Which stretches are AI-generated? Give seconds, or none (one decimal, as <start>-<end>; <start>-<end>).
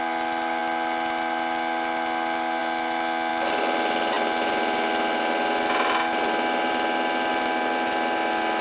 none